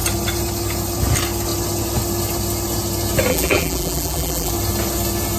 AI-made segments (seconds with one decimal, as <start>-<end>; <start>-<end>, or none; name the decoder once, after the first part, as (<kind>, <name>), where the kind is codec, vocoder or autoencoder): 3.3-4.5 (vocoder, BigVGAN v2)